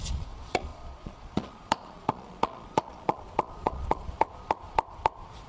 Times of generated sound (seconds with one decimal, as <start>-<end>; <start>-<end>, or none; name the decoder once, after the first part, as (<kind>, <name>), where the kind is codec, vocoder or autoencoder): 0.0-5.5 (vocoder, Vocos)